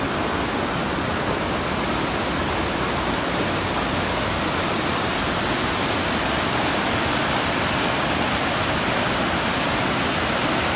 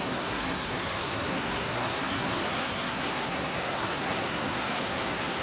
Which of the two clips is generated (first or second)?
second